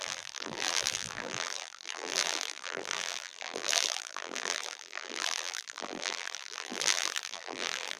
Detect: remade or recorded remade